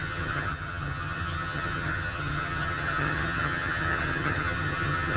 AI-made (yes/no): yes